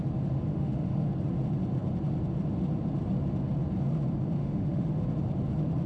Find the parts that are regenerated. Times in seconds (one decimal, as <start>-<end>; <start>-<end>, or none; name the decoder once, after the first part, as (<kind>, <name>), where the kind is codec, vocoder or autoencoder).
0.5-1.1 (autoencoder, DAC-VAE); 4.4-4.9